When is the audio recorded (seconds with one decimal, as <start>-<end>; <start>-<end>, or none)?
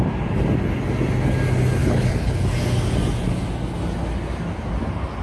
0.0-1.8; 2.4-5.2